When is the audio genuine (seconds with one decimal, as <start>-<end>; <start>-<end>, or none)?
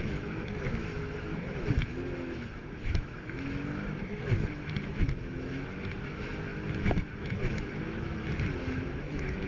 none